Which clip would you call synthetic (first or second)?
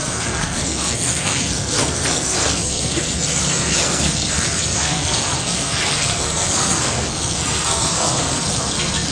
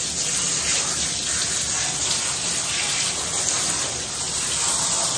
first